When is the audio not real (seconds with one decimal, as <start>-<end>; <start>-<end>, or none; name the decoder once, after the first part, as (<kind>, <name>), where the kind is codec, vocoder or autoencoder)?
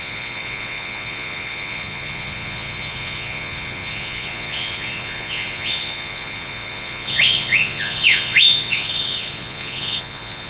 0.0-10.5 (vocoder, Vocos)